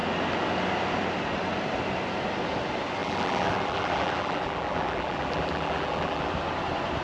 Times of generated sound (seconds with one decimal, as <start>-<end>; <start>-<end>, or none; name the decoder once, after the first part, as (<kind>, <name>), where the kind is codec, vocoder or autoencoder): 3.0-6.3 (vocoder, BigVGAN v2)

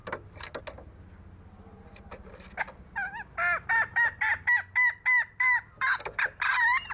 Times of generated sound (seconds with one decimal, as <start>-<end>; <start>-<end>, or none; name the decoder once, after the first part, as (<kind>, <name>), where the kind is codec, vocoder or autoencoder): none

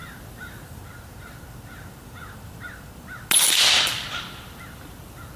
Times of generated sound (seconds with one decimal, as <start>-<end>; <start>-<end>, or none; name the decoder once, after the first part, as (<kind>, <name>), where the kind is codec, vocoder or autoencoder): 0.0-0.8 (vocoder, BigVGAN v2); 4.0-5.4

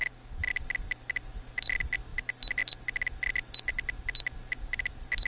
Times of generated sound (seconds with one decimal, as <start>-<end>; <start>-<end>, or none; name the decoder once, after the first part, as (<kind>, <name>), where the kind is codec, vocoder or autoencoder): none

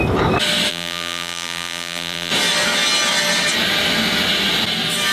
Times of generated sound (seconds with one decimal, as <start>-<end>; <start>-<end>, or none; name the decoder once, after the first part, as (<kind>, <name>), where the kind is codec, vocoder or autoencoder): 0.7-2.3 (vocoder, BigVGAN v2)

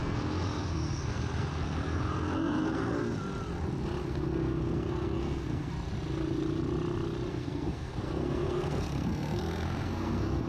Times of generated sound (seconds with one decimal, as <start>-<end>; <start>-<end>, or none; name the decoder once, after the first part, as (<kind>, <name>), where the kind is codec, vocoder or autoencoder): 0.0-3.0 (codec, SNAC); 4.0-5.7; 7.3-10.5

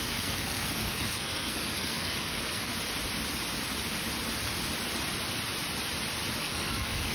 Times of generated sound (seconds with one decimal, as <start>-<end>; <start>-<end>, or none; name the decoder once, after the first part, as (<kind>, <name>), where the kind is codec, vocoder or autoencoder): 0.0-2.7 (codec, SNAC); 6.4-7.1